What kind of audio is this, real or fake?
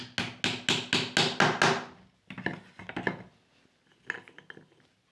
real